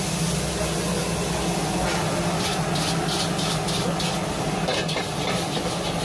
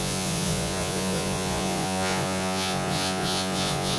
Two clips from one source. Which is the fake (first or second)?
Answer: second